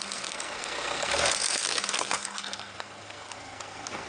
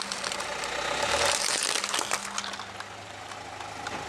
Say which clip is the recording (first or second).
second